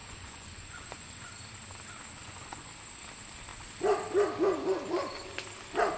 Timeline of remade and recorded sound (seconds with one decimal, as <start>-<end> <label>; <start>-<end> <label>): 0.0-1.3 remade; 1.3-2.2 recorded; 2.2-2.7 remade; 2.7-6.0 recorded